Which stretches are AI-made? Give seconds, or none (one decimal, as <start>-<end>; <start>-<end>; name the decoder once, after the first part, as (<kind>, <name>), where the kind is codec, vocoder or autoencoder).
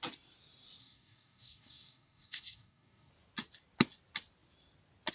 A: 0.8-3.1 (codec, DAC)